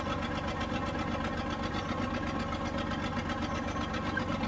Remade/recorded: recorded